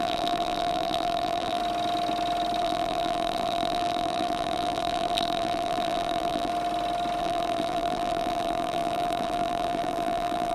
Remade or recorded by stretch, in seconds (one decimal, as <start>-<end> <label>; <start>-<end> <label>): 0.0-1.6 remade; 1.6-2.6 recorded; 2.6-6.5 remade; 6.5-7.2 recorded; 7.2-10.5 remade